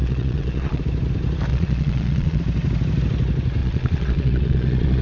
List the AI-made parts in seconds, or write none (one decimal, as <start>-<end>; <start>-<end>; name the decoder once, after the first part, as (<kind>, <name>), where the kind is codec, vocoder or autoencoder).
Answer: 0.0-0.8 (vocoder, Vocos); 1.5-2.4; 3.6-5.0